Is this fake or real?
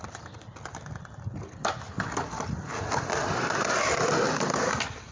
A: real